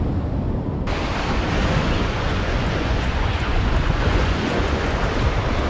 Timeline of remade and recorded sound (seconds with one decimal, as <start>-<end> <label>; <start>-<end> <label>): 0.0-1.6 recorded; 1.6-5.0 remade; 5.0-5.7 recorded